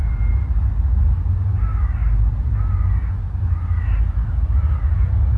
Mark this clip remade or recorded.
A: recorded